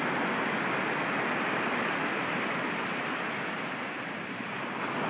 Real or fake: real